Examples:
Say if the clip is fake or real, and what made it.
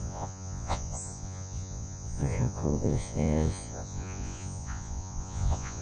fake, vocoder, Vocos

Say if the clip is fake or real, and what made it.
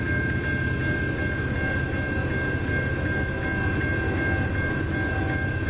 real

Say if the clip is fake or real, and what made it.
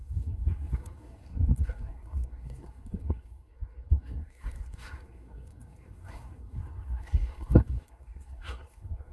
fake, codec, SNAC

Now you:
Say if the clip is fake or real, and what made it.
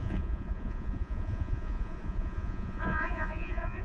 fake, vocoder, Vocos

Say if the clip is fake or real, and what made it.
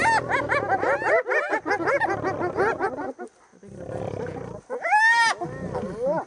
real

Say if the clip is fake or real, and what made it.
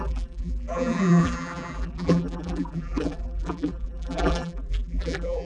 fake, vocoder, BigVGAN v2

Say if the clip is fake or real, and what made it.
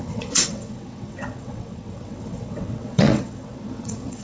fake, vocoder, WaveNeXt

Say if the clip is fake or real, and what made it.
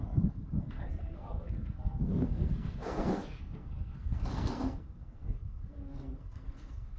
fake, codec, SNAC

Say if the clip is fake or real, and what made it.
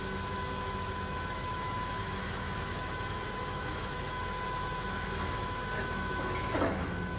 fake, autoencoder, DAC-VAE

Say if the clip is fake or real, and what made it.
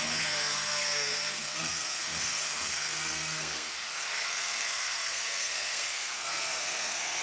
fake, codec, SNAC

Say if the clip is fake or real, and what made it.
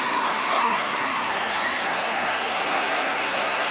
fake, codec, SNAC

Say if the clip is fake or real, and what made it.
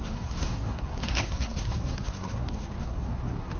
fake, codec, SNAC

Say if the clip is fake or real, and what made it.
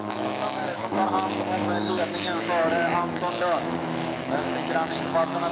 fake, autoencoder, DAC-VAE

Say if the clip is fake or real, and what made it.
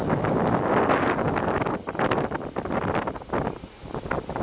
real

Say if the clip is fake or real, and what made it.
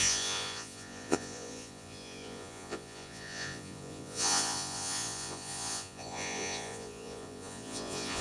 fake, vocoder, Vocos